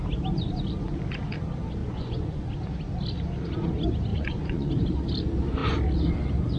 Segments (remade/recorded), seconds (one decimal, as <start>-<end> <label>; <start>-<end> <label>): 0.0-1.8 recorded; 1.8-2.5 remade; 2.5-4.1 recorded; 4.1-4.7 remade; 4.7-6.6 recorded